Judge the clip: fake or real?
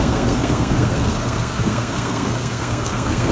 fake